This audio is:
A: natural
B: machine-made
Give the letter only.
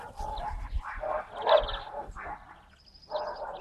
A